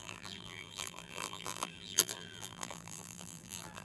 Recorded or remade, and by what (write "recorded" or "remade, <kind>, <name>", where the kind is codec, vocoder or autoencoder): remade, vocoder, BigVGAN v2